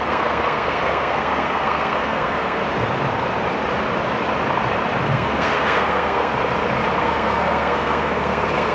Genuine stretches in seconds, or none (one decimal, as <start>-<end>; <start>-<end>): 2.6-5.0; 6.3-7.0